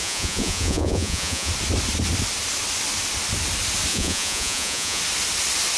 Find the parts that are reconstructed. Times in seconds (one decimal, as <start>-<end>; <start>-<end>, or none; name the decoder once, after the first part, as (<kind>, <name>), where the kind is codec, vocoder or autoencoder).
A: 0.0-1.5 (vocoder, Vocos); 3.9-5.0